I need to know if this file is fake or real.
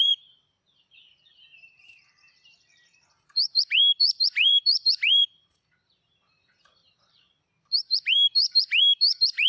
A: fake